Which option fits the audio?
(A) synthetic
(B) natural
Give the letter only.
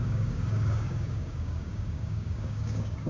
A